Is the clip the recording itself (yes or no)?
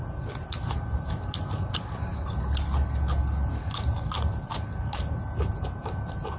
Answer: yes